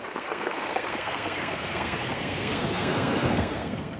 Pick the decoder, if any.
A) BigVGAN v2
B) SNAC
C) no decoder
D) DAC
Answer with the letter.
B